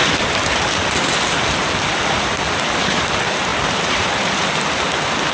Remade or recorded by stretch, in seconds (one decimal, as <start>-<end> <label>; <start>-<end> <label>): 0.0-5.3 recorded